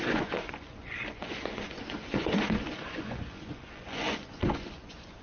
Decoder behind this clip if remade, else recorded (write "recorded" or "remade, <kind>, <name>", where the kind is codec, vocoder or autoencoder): remade, vocoder, Vocos